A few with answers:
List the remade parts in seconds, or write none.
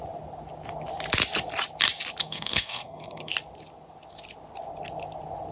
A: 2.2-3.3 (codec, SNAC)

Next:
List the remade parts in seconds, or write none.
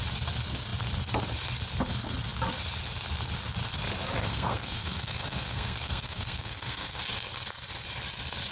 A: 4.2-7.0 (codec, SNAC)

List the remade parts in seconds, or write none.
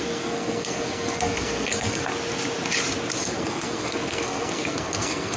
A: 0.0-2.1 (codec, SNAC); 3.2-5.4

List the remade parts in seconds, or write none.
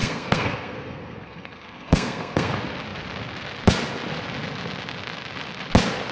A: 0.0-2.5 (codec, SNAC)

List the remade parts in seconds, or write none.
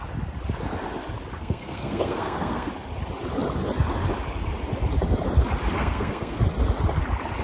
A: 1.3-2.7 (codec, SNAC); 5.8-6.4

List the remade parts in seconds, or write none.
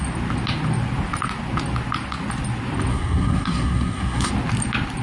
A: 2.9-4.3 (codec, SNAC)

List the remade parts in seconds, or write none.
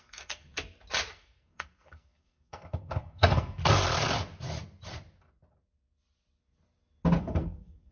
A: 0.0-0.5 (codec, SNAC); 1.1-3.6; 7.2-7.9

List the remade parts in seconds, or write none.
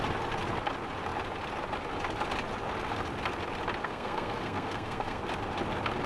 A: 3.8-5.2 (codec, SNAC)